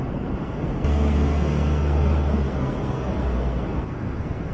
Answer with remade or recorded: remade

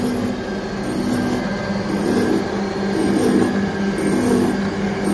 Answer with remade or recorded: recorded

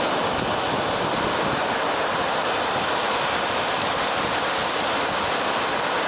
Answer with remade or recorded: recorded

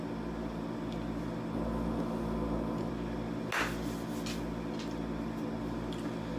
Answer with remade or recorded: recorded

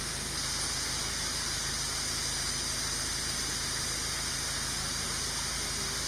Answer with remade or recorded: recorded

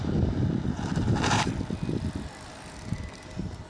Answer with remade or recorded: recorded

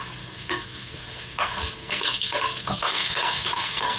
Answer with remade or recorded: remade